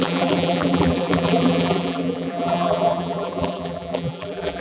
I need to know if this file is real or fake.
fake